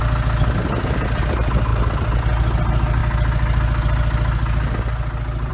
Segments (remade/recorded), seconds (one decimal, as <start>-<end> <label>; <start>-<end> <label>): 0.0-1.7 recorded; 1.7-2.2 remade; 2.2-5.5 recorded